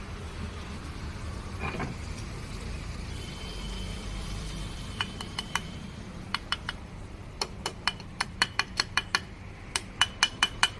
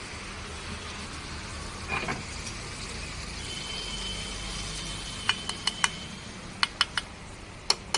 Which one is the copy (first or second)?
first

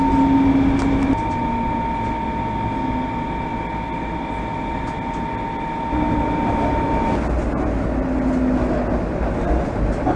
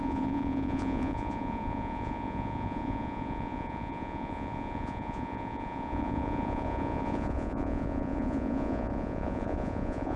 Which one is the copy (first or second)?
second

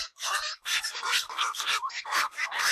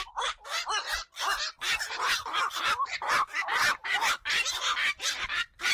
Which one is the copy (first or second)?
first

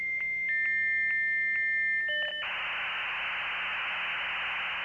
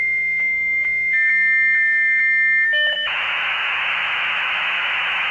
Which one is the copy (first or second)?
second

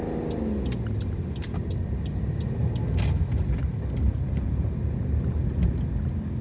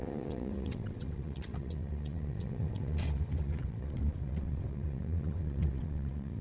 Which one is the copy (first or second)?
second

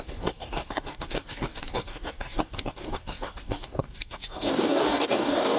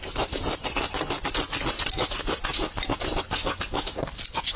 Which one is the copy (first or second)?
first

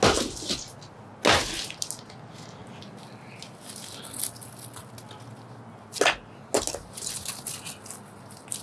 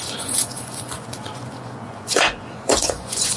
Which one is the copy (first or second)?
second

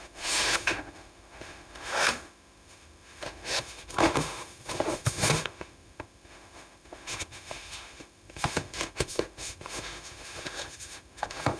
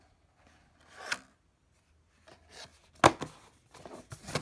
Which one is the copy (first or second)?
first